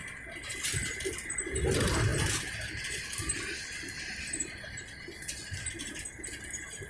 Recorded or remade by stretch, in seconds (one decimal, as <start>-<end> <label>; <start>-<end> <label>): 0.0-6.9 recorded